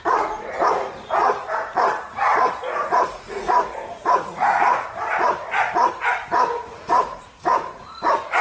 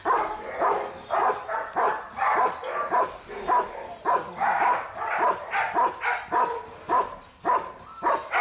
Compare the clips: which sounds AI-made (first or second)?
first